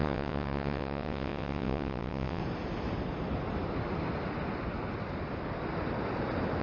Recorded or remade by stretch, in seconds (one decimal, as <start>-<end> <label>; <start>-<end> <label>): 0.0-2.4 remade; 2.4-6.6 recorded